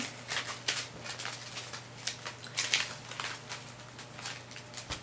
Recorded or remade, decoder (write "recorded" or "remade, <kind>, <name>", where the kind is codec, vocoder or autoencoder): recorded